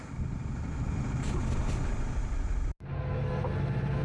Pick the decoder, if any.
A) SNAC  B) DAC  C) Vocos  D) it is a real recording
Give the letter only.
D